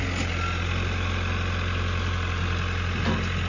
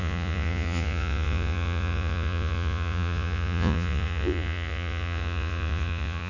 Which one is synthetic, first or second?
second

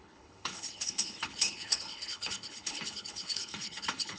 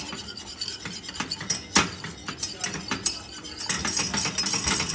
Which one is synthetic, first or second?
first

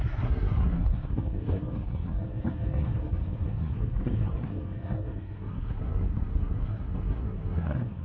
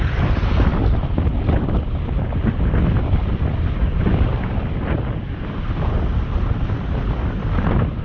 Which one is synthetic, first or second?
first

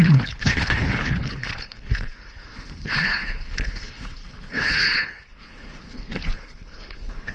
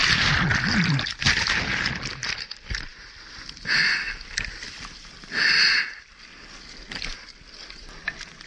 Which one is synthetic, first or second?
first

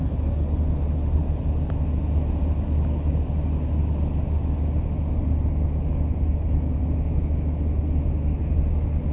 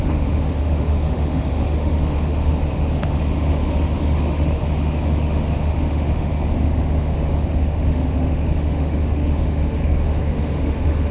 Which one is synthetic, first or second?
second